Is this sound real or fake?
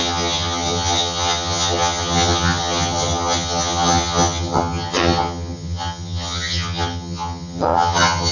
fake